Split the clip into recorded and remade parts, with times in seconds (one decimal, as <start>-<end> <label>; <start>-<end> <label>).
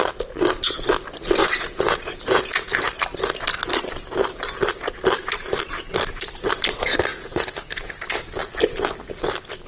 0.0-1.4 recorded; 1.4-2.4 remade; 2.4-7.1 recorded; 7.1-7.9 remade; 7.9-9.7 recorded